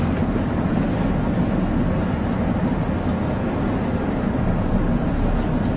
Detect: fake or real real